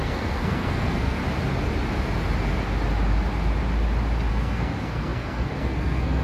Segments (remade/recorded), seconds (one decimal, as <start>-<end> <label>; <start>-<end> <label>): 0.0-1.2 remade; 1.2-4.3 recorded; 4.3-6.2 remade